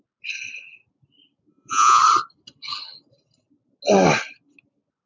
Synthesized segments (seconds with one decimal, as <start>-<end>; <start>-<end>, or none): 1.5-2.0